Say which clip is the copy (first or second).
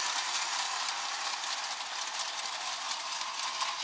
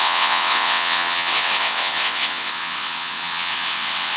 second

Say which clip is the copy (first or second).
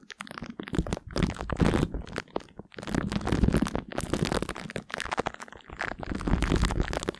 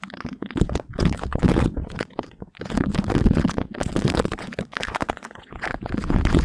second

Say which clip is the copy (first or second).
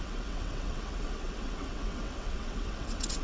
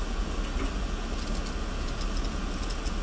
first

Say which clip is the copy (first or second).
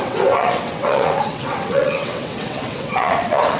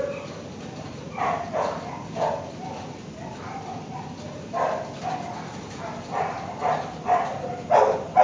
first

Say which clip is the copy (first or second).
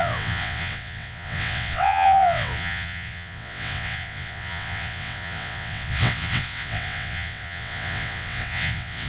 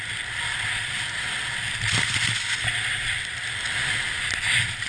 first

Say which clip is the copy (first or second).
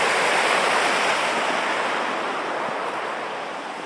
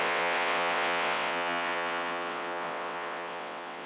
second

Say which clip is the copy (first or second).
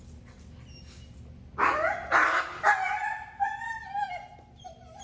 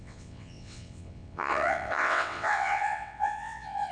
second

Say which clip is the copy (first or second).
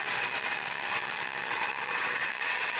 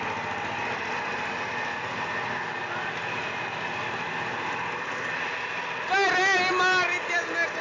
first